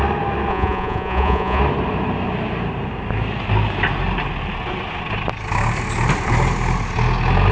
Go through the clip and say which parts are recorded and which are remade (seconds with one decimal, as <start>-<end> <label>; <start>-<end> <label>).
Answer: 0.0-0.5 recorded; 0.5-1.6 remade; 1.6-7.5 recorded